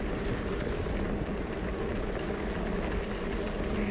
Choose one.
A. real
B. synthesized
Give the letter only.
A